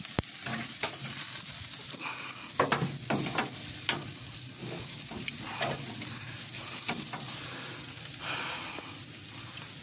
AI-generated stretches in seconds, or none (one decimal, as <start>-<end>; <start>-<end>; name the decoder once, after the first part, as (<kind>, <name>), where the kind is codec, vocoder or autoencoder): none